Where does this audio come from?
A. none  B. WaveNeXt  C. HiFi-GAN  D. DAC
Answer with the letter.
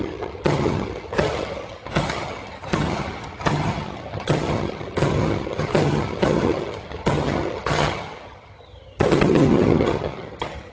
C